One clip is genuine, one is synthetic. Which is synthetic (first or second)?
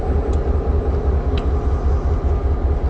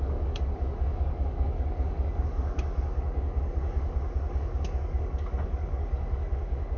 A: second